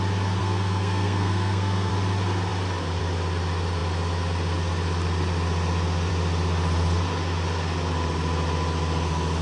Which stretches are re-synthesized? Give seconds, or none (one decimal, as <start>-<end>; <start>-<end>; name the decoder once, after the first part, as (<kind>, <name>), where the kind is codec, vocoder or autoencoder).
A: 0.4-1.9 (codec, SNAC)